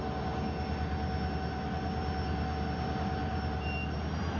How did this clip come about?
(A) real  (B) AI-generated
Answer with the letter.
A